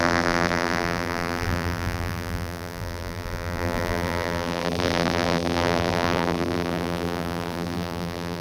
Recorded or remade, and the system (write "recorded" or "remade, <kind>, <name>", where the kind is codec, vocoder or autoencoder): remade, vocoder, BigVGAN v2